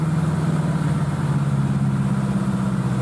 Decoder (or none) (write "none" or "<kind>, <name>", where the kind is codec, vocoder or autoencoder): none